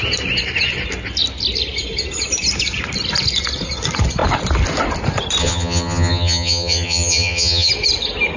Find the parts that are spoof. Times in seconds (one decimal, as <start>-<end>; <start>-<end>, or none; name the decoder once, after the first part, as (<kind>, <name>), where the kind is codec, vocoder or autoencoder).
5.4-7.7 (vocoder, HiFi-GAN)